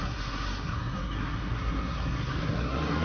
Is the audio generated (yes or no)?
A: yes